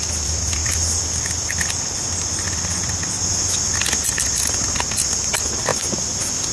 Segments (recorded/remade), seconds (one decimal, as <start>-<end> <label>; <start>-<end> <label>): 0.0-0.6 recorded; 0.6-1.6 remade; 1.6-5.7 recorded; 5.7-6.5 remade